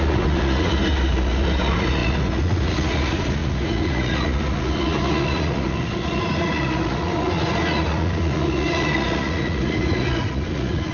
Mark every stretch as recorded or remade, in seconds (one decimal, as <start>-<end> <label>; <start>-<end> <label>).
0.0-10.9 remade